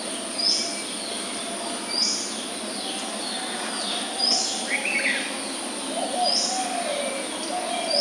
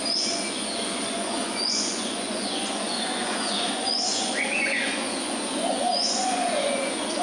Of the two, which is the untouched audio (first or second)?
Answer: first